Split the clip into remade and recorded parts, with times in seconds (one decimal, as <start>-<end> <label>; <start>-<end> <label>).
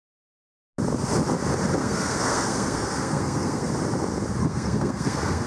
0.0-1.8 recorded; 1.8-3.7 remade; 3.7-4.4 recorded; 4.4-5.5 remade